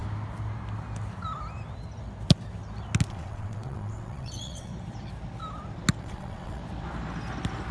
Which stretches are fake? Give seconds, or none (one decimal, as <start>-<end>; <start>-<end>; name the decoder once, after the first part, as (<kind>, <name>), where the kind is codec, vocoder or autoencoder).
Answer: 3.1-4.7 (vocoder, WaveNeXt); 6.0-6.6